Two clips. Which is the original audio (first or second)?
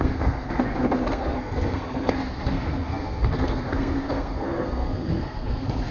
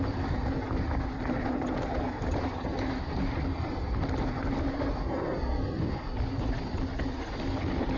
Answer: second